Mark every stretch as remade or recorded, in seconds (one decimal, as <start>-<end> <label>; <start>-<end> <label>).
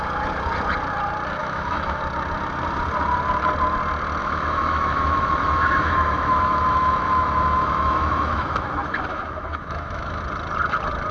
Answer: 0.0-1.4 recorded; 1.4-2.0 remade; 2.0-4.2 recorded; 4.2-8.7 remade; 8.7-9.1 recorded; 9.1-10.2 remade; 10.2-11.1 recorded